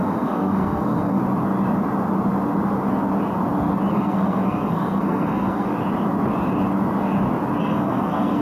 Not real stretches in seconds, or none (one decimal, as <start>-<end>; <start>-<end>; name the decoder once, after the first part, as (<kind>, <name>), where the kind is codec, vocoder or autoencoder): 0.0-1.2 (codec, SNAC); 3.9-5.7; 7.6-8.4

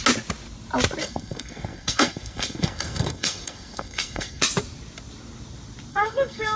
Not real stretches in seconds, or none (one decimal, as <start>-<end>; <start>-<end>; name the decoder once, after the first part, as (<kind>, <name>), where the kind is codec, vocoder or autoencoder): 1.0-4.4 (codec, SNAC); 5.9-6.6

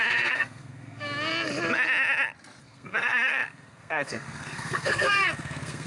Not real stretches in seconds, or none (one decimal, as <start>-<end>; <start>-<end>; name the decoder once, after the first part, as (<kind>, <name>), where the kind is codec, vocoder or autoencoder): 0.0-1.3 (codec, SNAC); 2.6-5.9